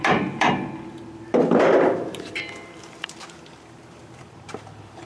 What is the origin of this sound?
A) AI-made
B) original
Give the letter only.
A